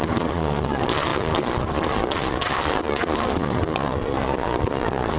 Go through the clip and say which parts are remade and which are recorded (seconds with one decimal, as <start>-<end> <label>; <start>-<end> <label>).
0.0-5.2 remade